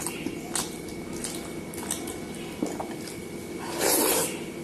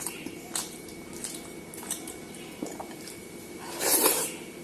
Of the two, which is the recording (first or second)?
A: first